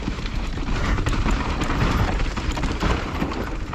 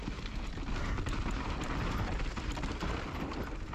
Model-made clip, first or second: first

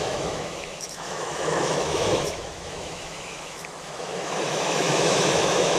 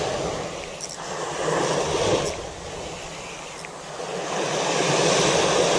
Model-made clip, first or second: first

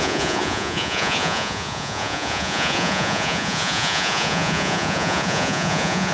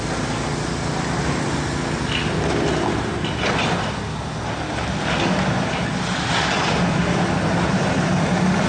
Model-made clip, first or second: first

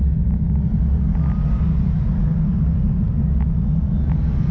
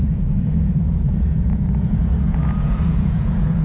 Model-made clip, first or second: second